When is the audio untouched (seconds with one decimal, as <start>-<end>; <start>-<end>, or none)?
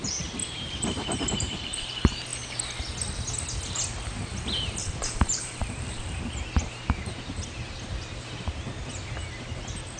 0.0-0.4; 1.9-4.8; 6.2-10.0